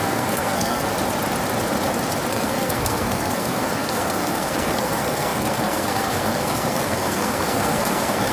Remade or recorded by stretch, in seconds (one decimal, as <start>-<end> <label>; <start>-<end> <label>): 0.0-0.9 remade; 0.9-2.3 recorded; 2.3-8.3 remade

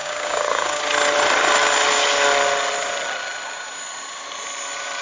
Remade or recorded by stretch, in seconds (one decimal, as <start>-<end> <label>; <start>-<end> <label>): 0.0-0.8 remade; 0.8-5.0 recorded